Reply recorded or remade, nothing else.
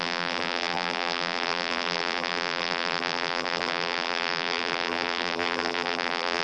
remade